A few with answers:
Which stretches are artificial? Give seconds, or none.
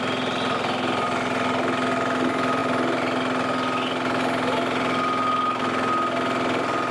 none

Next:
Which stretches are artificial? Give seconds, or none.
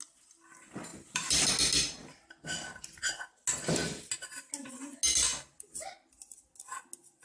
0.9-1.5 (vocoder, BigVGAN v2); 5.3-6.5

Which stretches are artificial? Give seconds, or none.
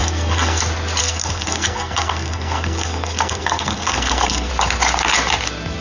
0.0-0.6 (codec, SNAC); 1.0-4.5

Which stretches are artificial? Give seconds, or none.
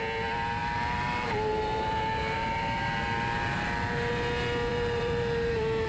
0.6-4.1 (vocoder, BigVGAN v2); 4.7-5.5